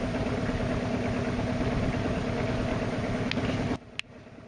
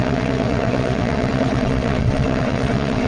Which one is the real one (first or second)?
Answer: first